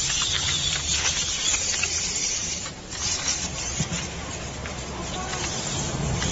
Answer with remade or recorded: remade